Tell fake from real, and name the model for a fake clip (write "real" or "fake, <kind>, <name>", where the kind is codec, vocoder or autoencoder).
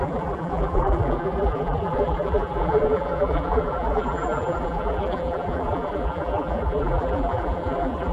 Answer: fake, vocoder, BigVGAN v2